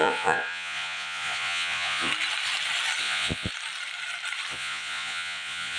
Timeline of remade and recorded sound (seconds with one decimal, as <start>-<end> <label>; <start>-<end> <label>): 0.0-2.1 remade; 2.1-3.0 recorded; 3.0-3.5 remade; 3.5-4.5 recorded; 4.5-5.8 remade